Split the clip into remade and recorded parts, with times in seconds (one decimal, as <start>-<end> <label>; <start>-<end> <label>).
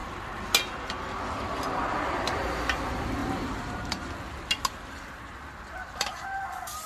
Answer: 0.0-3.2 recorded; 3.2-4.1 remade; 4.1-6.9 recorded